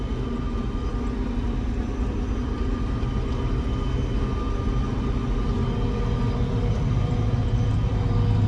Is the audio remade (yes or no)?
no